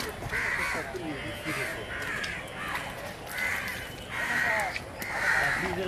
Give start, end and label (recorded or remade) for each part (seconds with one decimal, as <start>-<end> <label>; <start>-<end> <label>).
0.0-1.7 recorded; 1.7-2.2 remade; 2.2-3.5 recorded; 3.5-4.5 remade; 4.5-5.9 recorded